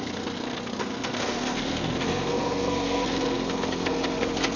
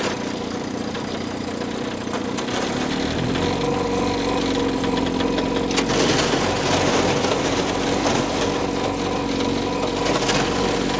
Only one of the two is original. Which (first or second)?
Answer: second